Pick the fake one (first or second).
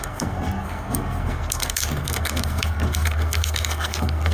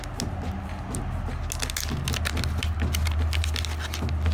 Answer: first